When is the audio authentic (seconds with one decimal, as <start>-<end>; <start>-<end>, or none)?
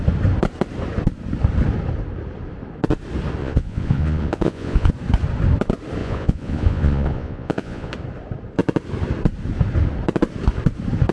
0.0-3.4; 4.9-6.0; 7.9-11.1